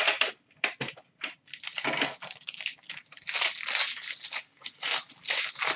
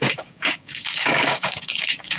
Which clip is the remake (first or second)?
second